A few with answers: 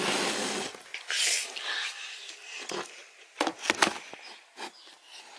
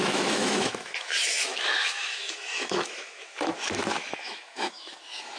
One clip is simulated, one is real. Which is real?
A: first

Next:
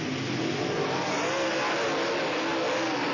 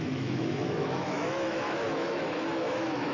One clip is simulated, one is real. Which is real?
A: first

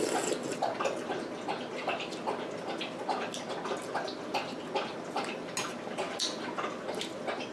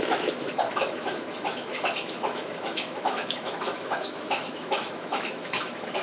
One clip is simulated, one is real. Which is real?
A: first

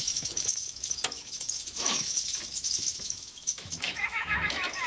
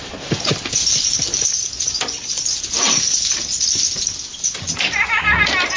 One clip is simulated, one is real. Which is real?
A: second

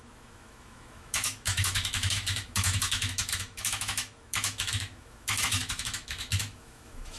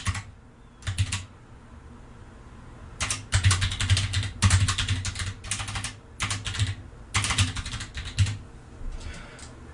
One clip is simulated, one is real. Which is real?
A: second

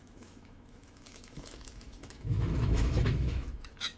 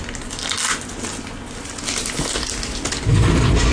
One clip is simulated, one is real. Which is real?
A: second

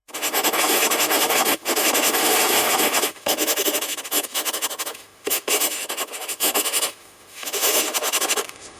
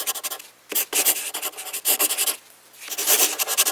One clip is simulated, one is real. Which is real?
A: second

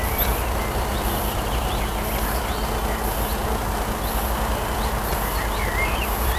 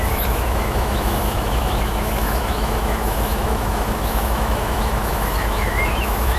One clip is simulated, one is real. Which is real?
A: first